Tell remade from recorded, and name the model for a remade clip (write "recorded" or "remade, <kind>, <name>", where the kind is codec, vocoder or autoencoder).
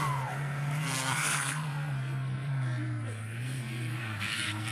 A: remade, codec, SNAC